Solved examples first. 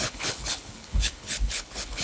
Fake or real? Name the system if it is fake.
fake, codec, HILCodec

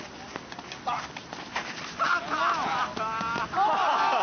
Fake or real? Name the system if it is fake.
real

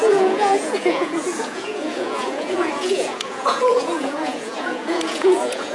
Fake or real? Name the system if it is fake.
fake, vocoder, Vocos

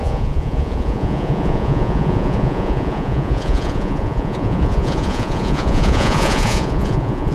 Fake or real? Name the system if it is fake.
fake, vocoder, Vocos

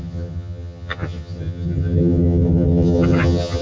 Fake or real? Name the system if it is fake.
fake, vocoder, HiFi-GAN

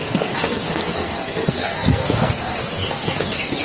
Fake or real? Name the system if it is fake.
fake, codec, SNAC